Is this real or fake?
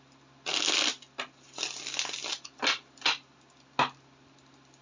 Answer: real